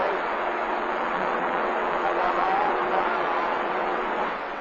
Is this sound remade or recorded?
remade